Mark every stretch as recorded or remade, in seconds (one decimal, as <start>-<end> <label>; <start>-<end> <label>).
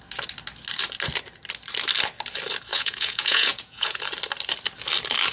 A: 0.0-2.7 recorded; 2.7-4.0 remade; 4.0-5.3 recorded